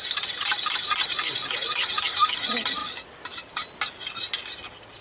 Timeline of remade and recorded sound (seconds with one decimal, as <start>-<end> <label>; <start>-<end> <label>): 0.0-2.8 recorded; 2.8-3.5 remade; 3.5-5.0 recorded